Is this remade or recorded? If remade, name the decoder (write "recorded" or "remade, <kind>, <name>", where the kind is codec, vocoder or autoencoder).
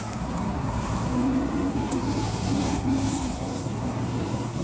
remade, codec, SNAC